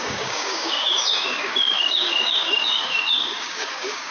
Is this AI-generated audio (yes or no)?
yes